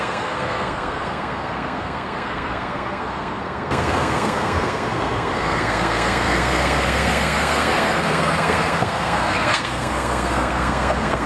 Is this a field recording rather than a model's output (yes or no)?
no